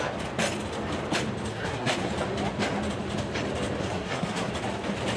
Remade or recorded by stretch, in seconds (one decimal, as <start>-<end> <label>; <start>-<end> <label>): 0.0-1.5 recorded; 1.5-2.1 remade; 2.1-3.8 recorded; 3.8-4.5 remade; 4.5-5.2 recorded